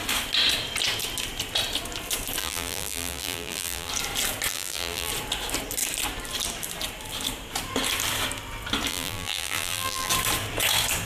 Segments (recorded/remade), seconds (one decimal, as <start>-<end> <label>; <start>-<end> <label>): 0.0-2.4 recorded; 2.4-3.9 remade; 3.9-4.5 recorded; 4.5-5.1 remade; 5.1-8.9 recorded; 8.9-10.1 remade; 10.1-11.1 recorded